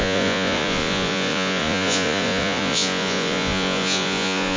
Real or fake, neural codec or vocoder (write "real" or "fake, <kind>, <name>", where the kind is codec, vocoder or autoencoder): fake, vocoder, Vocos